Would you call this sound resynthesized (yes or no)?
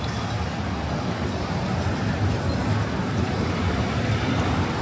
no